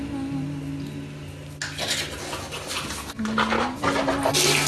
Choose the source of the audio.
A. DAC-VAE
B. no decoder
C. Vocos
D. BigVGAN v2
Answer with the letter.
B